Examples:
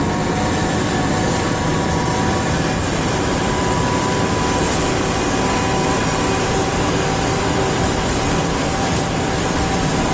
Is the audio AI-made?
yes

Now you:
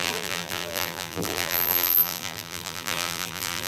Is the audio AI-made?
yes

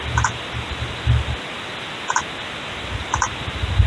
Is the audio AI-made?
yes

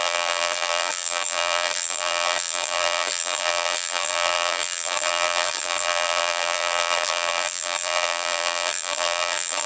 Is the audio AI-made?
yes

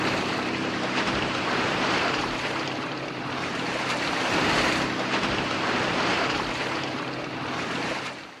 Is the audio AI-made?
yes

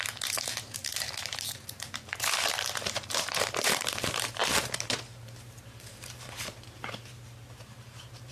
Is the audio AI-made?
yes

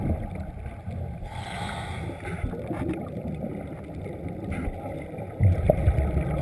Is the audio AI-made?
yes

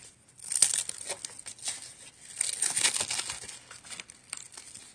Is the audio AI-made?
no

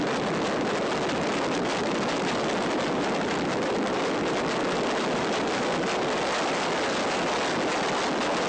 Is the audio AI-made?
no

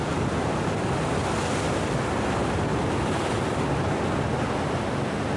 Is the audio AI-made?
no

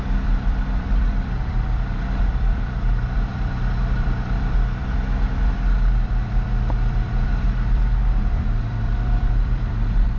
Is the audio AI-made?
yes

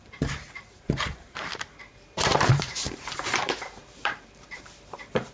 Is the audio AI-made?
yes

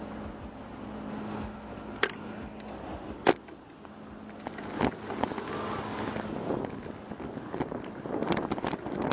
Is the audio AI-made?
no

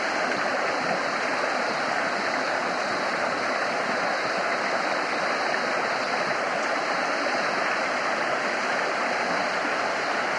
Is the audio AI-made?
no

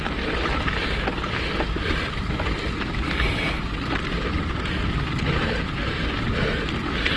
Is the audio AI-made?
no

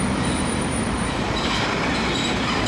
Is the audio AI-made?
yes